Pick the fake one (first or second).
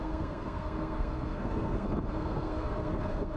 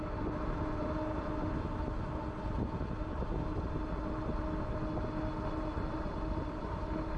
first